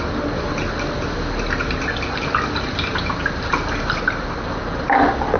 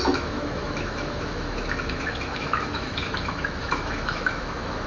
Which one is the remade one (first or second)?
second